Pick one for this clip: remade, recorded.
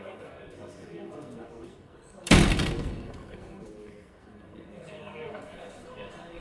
remade